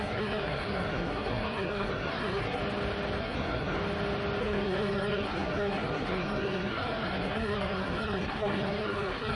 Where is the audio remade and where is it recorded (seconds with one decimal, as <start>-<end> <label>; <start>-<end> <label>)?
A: 0.0-2.6 remade; 2.6-3.2 recorded; 3.2-3.8 remade; 3.8-4.4 recorded; 4.4-9.3 remade